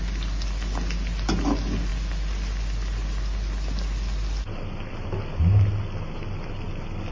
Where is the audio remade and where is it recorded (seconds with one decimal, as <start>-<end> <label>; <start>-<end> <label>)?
0.0-7.1 recorded